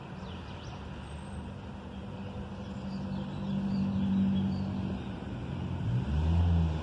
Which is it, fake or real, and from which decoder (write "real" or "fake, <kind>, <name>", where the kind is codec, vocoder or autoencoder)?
real